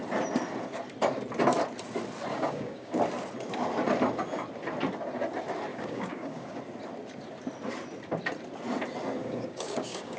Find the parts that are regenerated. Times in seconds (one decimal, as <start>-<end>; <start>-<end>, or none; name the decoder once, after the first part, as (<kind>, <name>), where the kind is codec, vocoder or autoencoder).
2.3-3.0 (codec, DAC); 5.7-6.6; 9.2-10.2